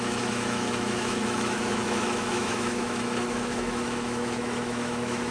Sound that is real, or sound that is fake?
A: fake